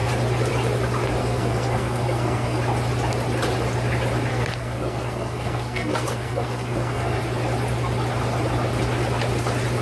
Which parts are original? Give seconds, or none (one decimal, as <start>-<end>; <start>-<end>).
0.0-1.2; 2.6-4.3; 7.2-9.8